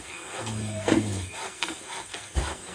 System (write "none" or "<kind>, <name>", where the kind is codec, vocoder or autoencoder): codec, SNAC